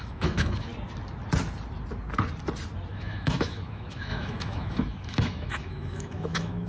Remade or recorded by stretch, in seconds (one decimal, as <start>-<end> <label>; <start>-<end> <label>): 0.0-0.7 remade; 0.7-2.9 recorded; 2.9-6.7 remade